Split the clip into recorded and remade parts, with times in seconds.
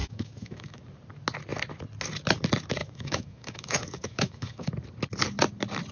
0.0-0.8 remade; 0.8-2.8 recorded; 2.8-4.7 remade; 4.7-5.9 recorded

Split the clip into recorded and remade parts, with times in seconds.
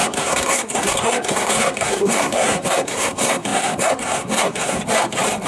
0.0-4.8 remade; 4.8-5.5 recorded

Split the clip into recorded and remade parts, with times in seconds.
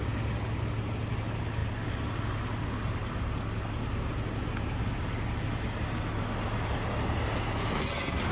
0.0-8.3 recorded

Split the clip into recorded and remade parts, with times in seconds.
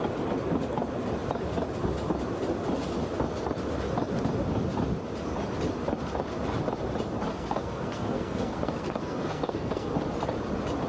0.0-7.3 recorded; 7.3-9.9 remade; 9.9-10.9 recorded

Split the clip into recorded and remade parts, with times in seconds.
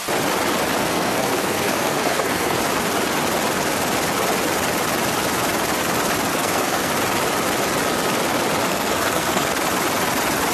0.0-0.8 recorded; 0.8-2.6 remade; 2.6-6.3 recorded; 6.3-6.9 remade; 6.9-8.7 recorded; 8.7-9.5 remade; 9.5-10.5 recorded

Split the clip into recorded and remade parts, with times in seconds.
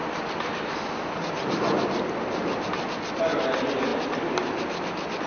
0.0-5.3 recorded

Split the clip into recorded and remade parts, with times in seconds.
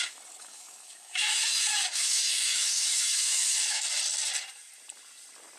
0.0-0.4 recorded; 0.4-3.8 remade; 3.8-5.6 recorded